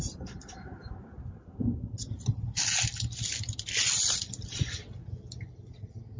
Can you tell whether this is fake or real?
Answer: real